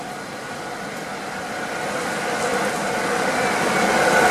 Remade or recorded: recorded